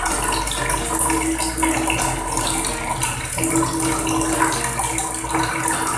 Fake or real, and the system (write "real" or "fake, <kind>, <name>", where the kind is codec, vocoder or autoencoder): real